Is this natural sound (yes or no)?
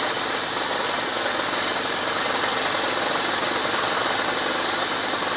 yes